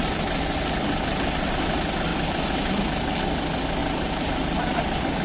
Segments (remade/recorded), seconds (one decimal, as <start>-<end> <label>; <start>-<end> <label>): 0.0-2.1 recorded; 2.1-2.8 remade; 2.8-3.8 recorded; 3.8-4.8 remade; 4.8-5.2 recorded